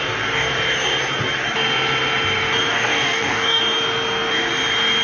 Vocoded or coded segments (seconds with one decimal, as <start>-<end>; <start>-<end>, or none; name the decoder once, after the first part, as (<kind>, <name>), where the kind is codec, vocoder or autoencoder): 2.7-3.6 (codec, DAC)

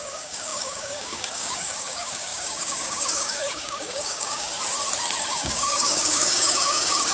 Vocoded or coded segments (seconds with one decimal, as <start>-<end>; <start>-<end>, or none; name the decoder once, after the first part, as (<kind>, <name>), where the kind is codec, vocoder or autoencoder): 0.0-4.5 (codec, DAC); 5.3-7.1

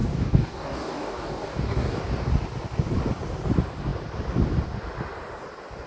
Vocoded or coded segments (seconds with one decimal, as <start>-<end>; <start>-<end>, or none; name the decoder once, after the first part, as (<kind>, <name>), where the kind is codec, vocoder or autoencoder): 0.0-2.3 (codec, DAC)